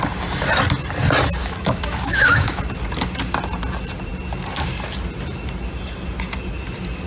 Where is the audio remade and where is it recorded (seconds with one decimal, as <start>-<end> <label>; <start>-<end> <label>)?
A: 0.0-1.4 recorded; 1.4-2.6 remade; 2.6-7.1 recorded